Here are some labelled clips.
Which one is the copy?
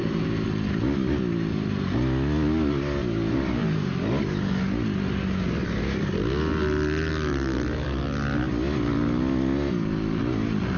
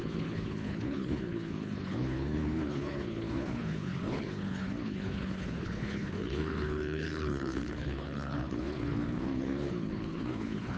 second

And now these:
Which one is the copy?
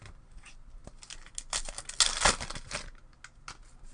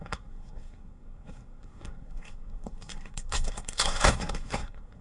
second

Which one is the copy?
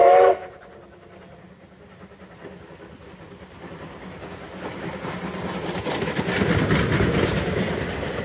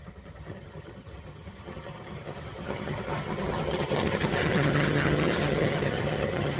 second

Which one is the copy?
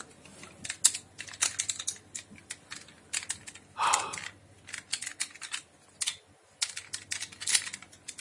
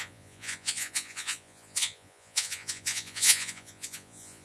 second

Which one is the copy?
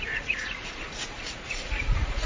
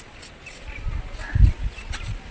first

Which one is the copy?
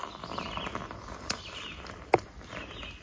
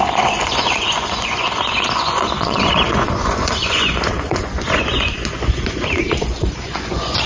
second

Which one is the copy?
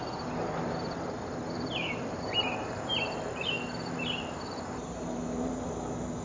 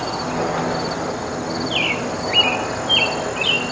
first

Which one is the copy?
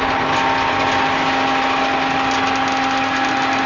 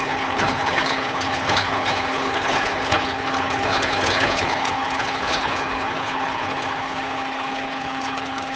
second